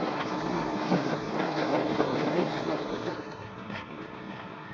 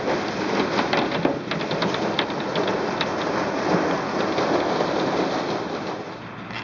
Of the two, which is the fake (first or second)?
first